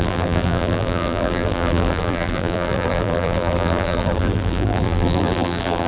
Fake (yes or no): yes